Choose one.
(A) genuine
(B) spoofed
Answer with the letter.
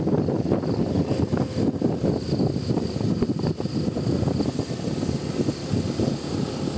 A